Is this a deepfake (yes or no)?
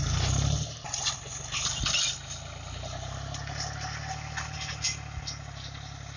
no